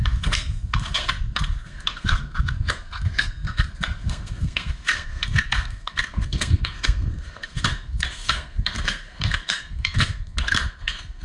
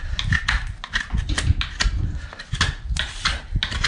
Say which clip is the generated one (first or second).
first